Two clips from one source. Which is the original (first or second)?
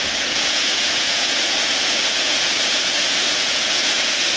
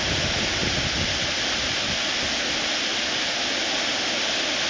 second